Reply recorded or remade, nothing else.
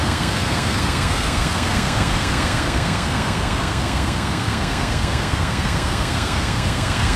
remade